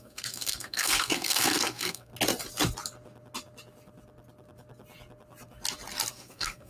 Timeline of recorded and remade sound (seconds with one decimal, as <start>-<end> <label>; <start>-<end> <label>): 0.0-2.1 remade; 2.1-6.1 recorded; 6.1-6.7 remade

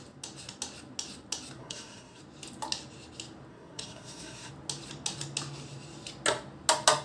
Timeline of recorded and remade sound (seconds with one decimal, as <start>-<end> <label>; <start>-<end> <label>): 0.0-1.6 recorded; 1.6-2.2 remade; 2.2-3.5 recorded; 3.5-4.5 remade; 4.5-7.0 recorded

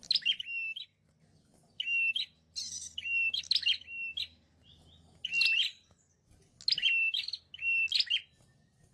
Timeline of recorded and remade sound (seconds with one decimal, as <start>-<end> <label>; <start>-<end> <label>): 0.0-8.9 recorded

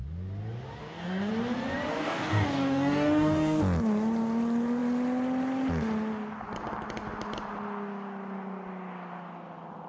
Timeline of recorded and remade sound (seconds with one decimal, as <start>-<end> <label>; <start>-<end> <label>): 0.0-0.8 recorded; 0.8-1.3 remade; 1.3-1.9 recorded; 1.9-3.6 remade; 3.6-9.9 recorded

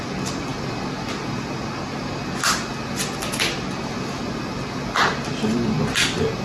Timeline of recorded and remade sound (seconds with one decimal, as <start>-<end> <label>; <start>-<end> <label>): 0.0-6.4 recorded

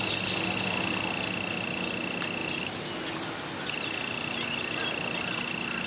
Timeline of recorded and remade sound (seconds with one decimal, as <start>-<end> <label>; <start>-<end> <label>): 0.0-2.4 recorded; 2.4-2.9 remade; 2.9-5.9 recorded

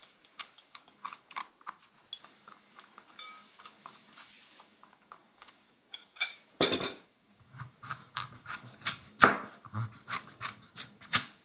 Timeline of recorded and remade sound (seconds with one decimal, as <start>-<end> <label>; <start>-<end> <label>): 0.0-1.4 remade; 1.4-2.2 recorded; 2.2-11.4 remade

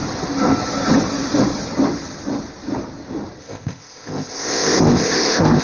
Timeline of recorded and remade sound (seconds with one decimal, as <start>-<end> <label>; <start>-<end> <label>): 0.0-3.4 recorded; 3.4-5.6 remade